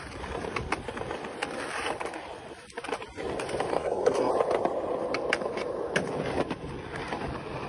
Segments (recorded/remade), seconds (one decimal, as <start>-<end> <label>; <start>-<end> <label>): 0.0-3.7 recorded; 3.7-4.3 remade; 4.3-7.7 recorded